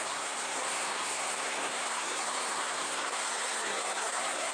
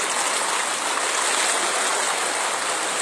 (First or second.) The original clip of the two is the second